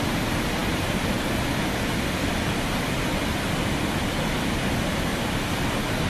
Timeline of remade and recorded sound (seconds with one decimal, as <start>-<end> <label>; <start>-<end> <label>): 0.0-5.1 recorded; 5.1-6.1 remade